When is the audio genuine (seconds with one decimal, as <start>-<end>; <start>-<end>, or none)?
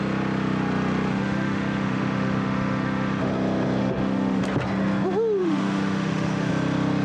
0.0-1.1; 3.3-3.8; 4.4-5.4; 6.5-7.0